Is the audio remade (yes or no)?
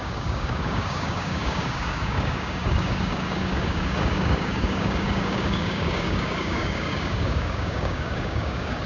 yes